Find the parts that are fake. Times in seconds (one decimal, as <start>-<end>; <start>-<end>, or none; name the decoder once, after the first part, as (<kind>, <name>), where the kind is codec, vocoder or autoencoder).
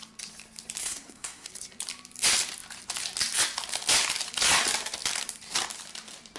0.8-1.5 (codec, SNAC)